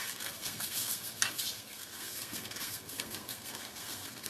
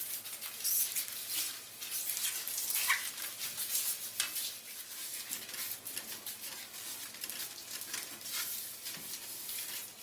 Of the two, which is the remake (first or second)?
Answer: first